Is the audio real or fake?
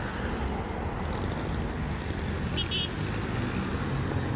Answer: real